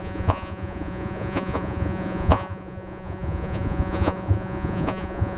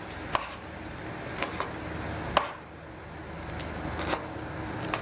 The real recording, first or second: second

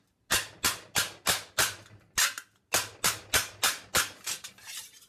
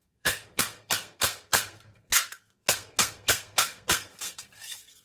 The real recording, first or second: first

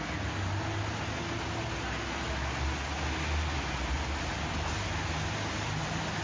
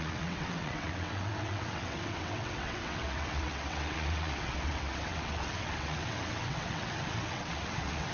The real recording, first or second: first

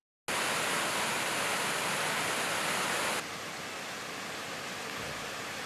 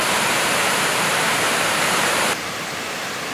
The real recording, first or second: first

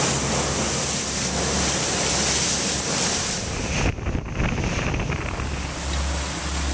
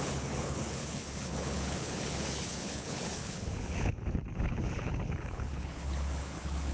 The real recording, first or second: first